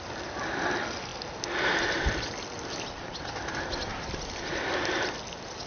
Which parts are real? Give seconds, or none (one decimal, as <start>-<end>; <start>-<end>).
0.0-5.7